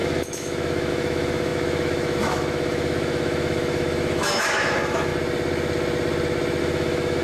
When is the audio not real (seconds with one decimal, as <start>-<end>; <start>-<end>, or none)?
0.0-5.1; 6.6-7.2